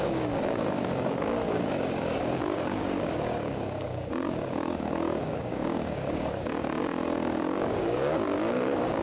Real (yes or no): no